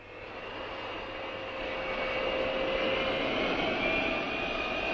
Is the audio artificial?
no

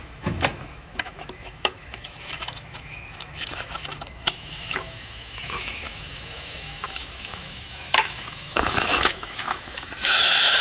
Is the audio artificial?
yes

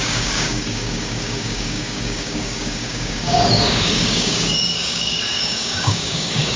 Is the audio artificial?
yes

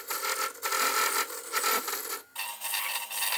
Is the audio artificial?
no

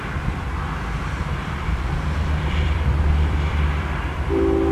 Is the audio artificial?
yes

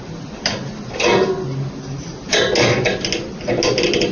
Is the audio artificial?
no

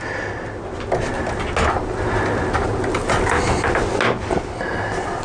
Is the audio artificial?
no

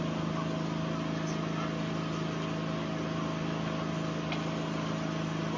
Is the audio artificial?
no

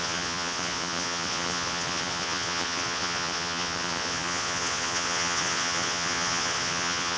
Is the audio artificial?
yes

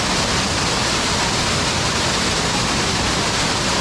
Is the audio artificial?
no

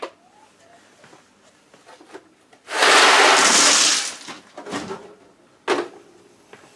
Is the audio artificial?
no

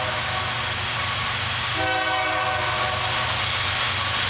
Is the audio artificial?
no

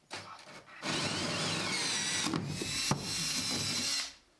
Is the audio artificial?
no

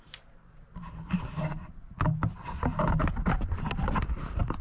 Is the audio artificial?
no